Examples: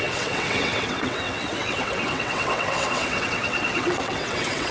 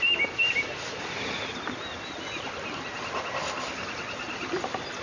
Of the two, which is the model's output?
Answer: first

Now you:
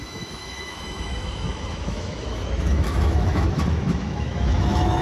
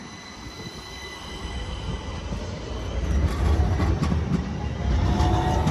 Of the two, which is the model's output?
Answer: first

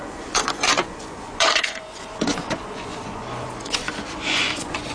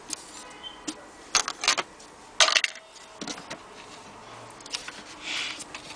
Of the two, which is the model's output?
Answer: first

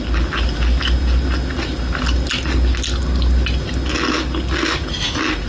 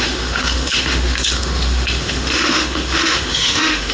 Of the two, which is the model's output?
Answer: second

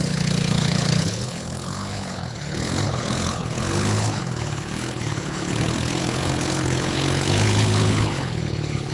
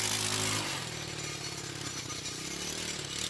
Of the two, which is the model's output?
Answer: first